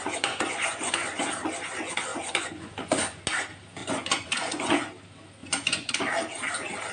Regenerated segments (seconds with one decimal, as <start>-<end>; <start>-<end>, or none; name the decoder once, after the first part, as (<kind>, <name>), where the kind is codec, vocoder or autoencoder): 0.0-1.3 (vocoder, Vocos); 2.1-3.2; 3.8-4.9; 5.4-6.0